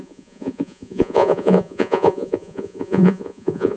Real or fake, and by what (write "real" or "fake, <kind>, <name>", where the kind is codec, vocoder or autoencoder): fake, vocoder, Vocos